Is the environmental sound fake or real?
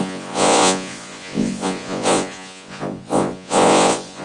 fake